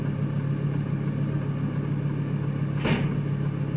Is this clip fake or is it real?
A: real